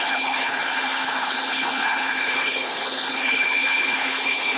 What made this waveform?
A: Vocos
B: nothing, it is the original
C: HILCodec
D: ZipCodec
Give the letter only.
C